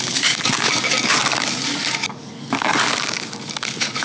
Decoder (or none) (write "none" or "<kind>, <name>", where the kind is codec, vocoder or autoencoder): codec, DAC